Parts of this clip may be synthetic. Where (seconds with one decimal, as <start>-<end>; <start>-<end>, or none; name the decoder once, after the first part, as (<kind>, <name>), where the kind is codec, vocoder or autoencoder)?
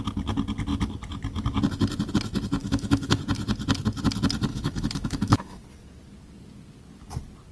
2.6-3.2 (autoencoder, DAC-VAE); 4.5-5.6